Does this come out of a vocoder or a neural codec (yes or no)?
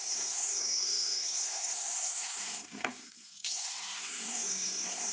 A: yes